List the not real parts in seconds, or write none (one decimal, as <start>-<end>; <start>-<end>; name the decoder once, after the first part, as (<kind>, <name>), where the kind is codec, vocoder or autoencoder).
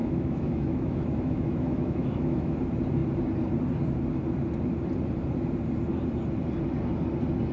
0.0-2.6 (autoencoder, DAC-VAE)